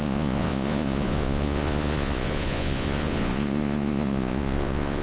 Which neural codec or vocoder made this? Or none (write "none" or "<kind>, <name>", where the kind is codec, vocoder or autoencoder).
vocoder, Vocos